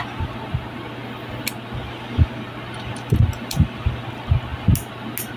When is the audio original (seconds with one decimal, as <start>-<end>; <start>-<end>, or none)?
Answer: 0.0-5.4